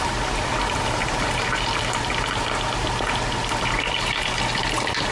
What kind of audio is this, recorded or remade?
recorded